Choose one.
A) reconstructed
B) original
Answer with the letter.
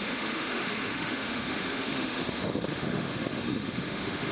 A